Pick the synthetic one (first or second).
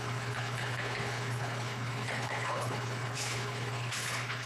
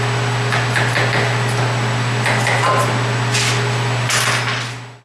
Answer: first